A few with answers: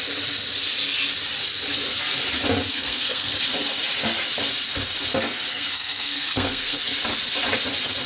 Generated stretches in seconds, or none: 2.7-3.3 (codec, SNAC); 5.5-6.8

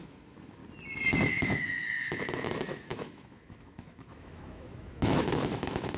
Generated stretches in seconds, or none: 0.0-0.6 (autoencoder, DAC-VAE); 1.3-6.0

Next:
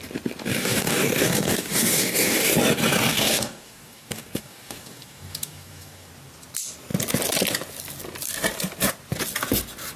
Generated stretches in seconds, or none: 0.5-2.5 (codec, DAC); 3.1-6.1

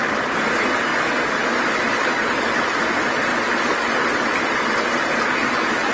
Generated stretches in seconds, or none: 0.0-0.9 (vocoder, BigVGAN v2); 2.4-3.3; 4.6-5.9

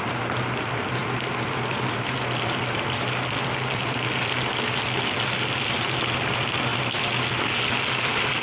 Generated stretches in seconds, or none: none